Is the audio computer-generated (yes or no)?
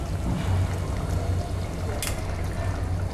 no